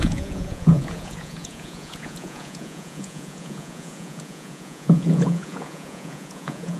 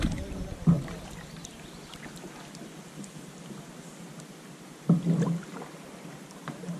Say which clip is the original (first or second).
second